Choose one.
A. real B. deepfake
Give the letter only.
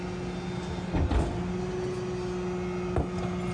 A